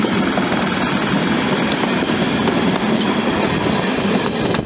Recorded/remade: remade